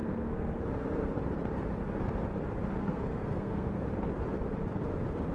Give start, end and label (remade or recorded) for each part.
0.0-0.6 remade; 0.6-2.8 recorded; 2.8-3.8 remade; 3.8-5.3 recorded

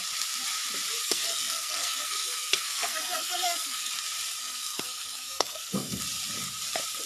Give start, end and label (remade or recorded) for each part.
0.0-1.0 recorded; 1.0-3.9 remade; 3.9-4.4 recorded; 4.4-6.0 remade; 6.0-7.1 recorded

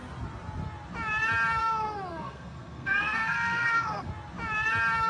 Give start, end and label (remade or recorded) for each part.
0.0-1.6 recorded; 1.6-4.1 remade; 4.1-5.1 recorded

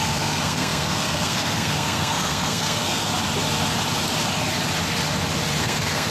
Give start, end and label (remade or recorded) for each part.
0.0-3.1 remade; 3.1-5.6 recorded; 5.6-6.1 remade

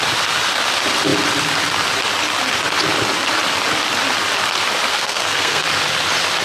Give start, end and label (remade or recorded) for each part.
0.0-4.9 recorded; 4.9-5.6 remade; 5.6-6.4 recorded

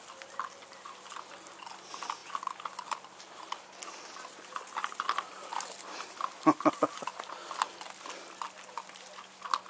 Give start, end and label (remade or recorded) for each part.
0.0-9.7 recorded